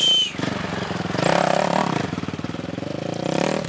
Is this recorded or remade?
recorded